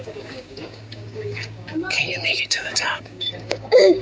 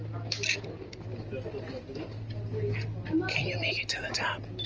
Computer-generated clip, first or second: first